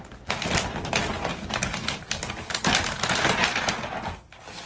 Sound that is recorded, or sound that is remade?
recorded